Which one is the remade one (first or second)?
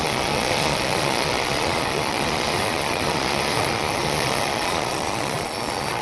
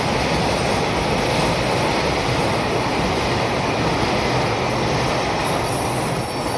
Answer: first